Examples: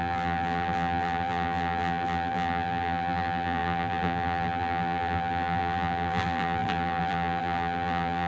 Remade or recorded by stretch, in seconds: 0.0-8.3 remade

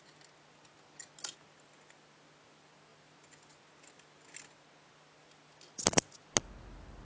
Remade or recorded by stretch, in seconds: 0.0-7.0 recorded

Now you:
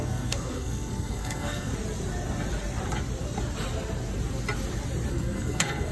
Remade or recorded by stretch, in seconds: 0.0-1.7 remade; 1.7-5.1 recorded; 5.1-5.9 remade

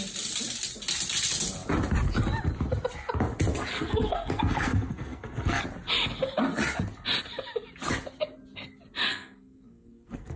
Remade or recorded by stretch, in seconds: 0.0-3.7 recorded; 3.7-5.6 remade; 5.6-9.0 recorded; 9.0-10.4 remade

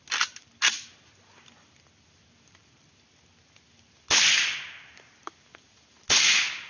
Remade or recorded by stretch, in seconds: 0.0-6.7 recorded

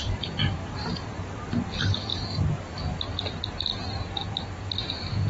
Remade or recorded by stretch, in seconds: 0.0-0.6 recorded; 0.6-1.4 remade; 1.4-2.1 recorded; 2.1-2.8 remade; 2.8-5.3 recorded

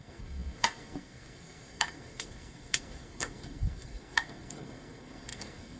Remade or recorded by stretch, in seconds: 0.0-5.8 remade